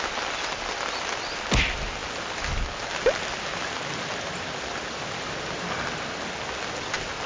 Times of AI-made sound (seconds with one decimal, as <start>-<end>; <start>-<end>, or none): none